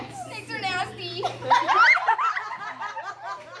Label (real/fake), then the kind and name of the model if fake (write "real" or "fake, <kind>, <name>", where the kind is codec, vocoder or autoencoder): real